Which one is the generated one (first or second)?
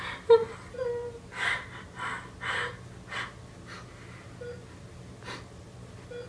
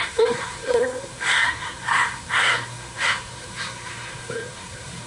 second